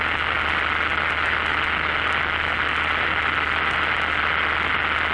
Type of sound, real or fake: real